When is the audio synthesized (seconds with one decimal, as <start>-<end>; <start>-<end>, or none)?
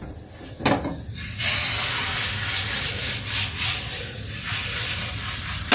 none